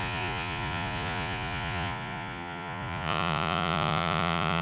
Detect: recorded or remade remade